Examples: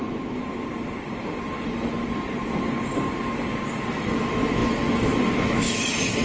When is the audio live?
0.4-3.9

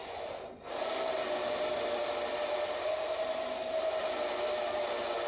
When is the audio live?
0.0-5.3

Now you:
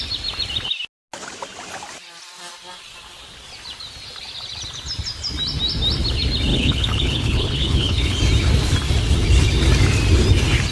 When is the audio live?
0.0-6.5; 8.2-10.7